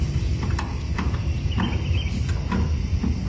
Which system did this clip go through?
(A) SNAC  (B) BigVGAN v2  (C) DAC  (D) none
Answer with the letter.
D